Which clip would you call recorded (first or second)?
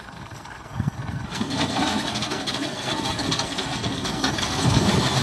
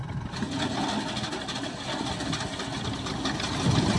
second